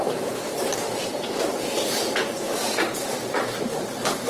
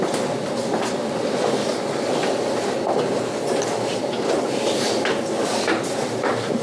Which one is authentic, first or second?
second